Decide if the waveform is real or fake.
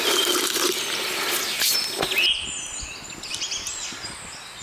real